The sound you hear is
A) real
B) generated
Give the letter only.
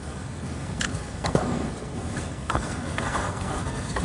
B